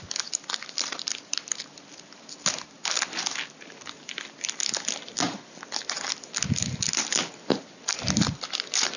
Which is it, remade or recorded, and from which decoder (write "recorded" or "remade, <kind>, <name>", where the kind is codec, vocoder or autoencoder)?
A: recorded